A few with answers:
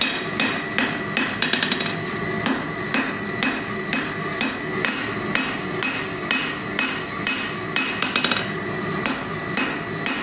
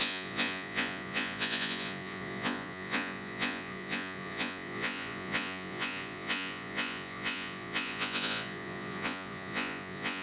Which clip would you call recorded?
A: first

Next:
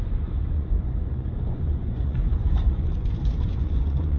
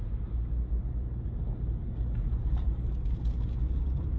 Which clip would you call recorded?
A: second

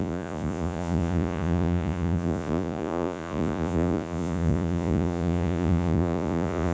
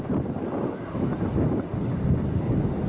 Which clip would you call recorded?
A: second